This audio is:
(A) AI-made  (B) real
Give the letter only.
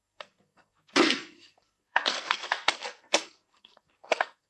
A